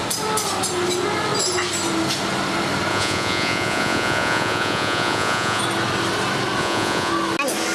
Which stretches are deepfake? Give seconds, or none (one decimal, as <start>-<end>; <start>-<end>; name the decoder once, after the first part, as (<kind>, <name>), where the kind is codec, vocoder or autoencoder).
2.9-5.6 (vocoder, Vocos); 6.6-7.1